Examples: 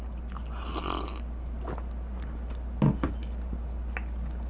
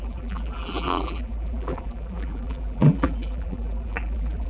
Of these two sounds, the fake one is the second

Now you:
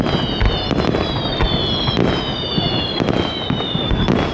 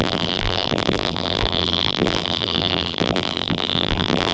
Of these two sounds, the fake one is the second